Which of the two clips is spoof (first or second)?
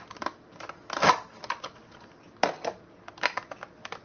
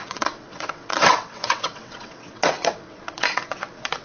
second